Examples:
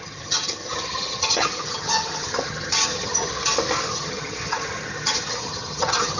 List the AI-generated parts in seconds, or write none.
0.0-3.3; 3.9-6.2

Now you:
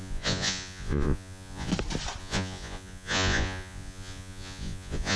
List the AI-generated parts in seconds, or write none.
0.0-1.7; 2.2-5.2

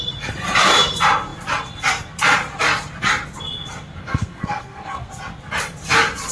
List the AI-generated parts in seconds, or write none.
4.0-5.1